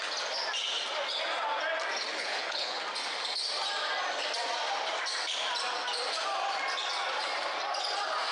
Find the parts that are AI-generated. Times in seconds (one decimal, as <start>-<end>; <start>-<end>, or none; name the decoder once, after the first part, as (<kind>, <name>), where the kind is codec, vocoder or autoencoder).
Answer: 2.1-2.8 (codec, HILCodec)